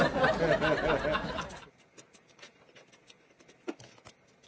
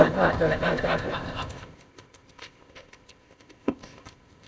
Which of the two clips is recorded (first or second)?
first